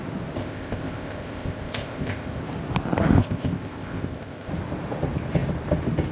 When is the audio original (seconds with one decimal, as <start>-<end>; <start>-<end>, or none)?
0.0-0.4; 2.4-3.2; 4.5-6.1